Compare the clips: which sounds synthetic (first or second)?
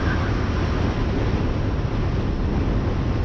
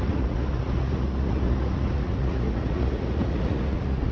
second